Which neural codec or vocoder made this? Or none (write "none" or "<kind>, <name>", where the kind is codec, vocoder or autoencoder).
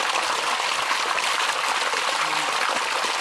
none